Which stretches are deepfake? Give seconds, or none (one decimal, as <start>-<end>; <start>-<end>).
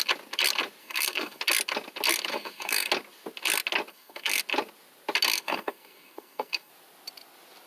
0.8-1.4; 2.3-2.9; 3.9-4.4; 5.3-6.7